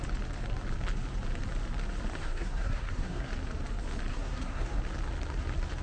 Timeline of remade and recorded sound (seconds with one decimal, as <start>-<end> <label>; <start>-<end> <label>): 0.0-2.2 recorded; 2.2-3.3 remade; 3.3-4.1 recorded; 4.1-4.8 remade; 4.8-5.8 recorded